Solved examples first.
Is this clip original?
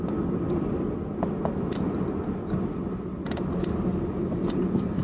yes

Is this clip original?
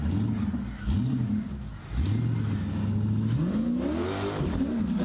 yes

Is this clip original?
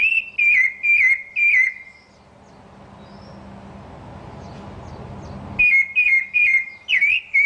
yes